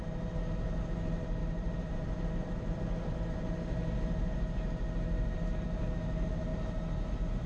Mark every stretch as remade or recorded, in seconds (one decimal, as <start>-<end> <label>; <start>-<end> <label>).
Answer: 0.0-1.4 recorded; 1.4-3.1 remade; 3.1-7.5 recorded